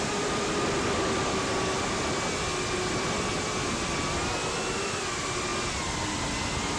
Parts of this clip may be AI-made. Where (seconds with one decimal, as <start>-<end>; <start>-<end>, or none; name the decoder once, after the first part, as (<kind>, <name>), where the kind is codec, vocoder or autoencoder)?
none